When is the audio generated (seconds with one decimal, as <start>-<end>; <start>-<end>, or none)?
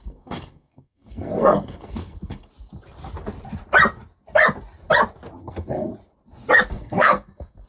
0.0-2.5; 5.4-5.9; 6.6-7.7